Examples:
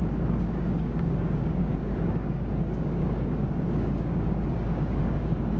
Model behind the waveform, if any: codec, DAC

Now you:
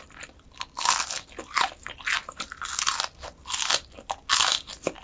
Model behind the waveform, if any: none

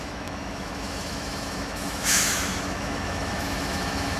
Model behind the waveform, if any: autoencoder, DAC-VAE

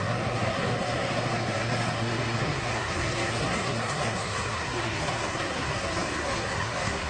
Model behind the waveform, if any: codec, SNAC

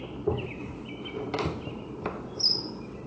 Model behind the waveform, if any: none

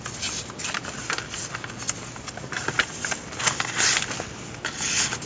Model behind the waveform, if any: none